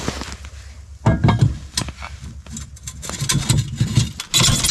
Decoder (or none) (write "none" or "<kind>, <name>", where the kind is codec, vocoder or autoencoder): none